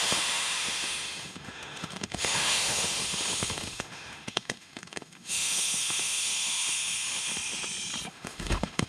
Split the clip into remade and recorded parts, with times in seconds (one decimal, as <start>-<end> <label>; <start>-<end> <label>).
0.0-7.3 remade; 7.3-8.1 recorded; 8.1-8.9 remade